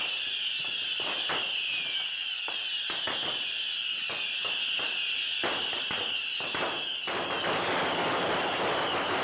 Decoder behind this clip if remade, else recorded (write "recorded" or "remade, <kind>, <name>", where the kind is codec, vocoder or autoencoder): recorded